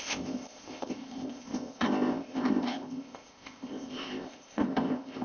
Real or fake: fake